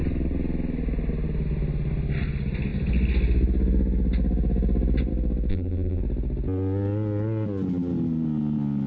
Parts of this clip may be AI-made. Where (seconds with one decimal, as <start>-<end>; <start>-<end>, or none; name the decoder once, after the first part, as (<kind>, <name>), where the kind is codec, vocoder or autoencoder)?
5.5-6.0 (vocoder, BigVGAN v2)